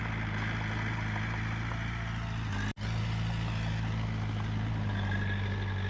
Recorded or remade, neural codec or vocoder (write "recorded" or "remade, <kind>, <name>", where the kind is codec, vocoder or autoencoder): recorded